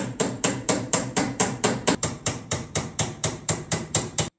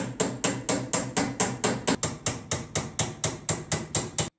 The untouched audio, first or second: second